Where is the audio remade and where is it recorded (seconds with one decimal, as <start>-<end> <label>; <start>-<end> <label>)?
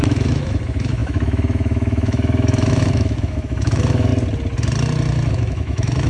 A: 0.0-4.1 remade; 4.1-5.3 recorded; 5.3-6.1 remade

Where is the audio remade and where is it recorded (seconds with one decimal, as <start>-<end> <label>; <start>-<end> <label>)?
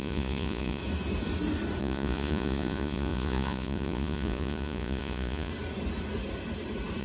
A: 0.0-0.8 remade; 0.8-1.8 recorded; 1.8-5.5 remade; 5.5-7.0 recorded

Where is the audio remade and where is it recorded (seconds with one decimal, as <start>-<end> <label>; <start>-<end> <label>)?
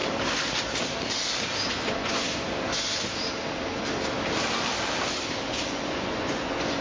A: 0.0-1.7 recorded; 1.7-2.7 remade; 2.7-5.5 recorded; 5.5-6.8 remade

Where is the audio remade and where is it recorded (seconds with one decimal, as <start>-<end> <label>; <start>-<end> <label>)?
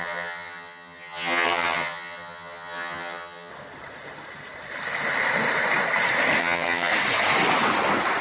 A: 0.0-3.5 remade; 3.5-6.4 recorded; 6.4-6.9 remade; 6.9-8.2 recorded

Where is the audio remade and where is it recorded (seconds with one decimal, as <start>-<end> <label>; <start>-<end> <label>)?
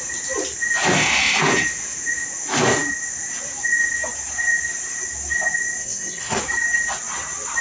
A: 0.0-5.8 recorded; 5.8-6.4 remade; 6.4-7.6 recorded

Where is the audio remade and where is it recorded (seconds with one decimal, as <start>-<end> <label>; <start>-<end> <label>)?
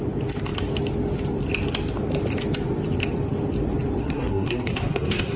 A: 0.0-4.0 recorded; 4.0-5.4 remade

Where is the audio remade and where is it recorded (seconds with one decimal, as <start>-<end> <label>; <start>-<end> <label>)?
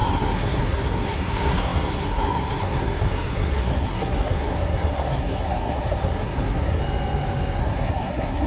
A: 0.0-6.8 remade; 6.8-7.6 recorded; 7.6-8.5 remade